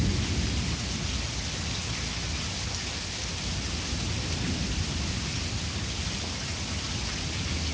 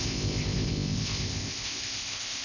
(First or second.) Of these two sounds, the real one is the first